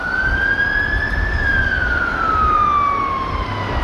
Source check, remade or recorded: recorded